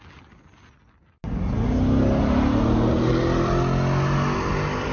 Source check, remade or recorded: recorded